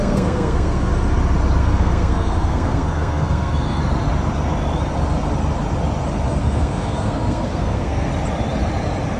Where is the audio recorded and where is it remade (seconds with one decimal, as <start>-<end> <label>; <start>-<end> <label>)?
0.0-0.9 remade; 0.9-1.6 recorded; 1.6-3.8 remade; 3.8-6.4 recorded; 6.4-8.1 remade; 8.1-9.2 recorded